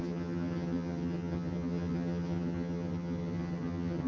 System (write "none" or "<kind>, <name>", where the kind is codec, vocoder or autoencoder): vocoder, HiFi-GAN